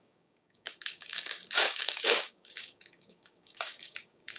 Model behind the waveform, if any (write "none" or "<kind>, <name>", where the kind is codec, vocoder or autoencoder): codec, DAC